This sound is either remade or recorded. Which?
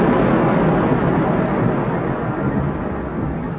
recorded